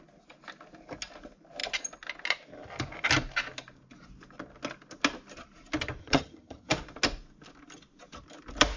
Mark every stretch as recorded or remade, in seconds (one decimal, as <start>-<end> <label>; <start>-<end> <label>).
0.0-6.0 recorded; 6.0-6.7 remade; 6.7-8.8 recorded